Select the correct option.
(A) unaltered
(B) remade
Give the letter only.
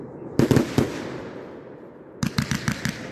A